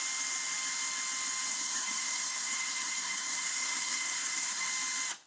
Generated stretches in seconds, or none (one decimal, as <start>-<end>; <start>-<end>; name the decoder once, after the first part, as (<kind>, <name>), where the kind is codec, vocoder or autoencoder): 1.5-4.7 (codec, SNAC)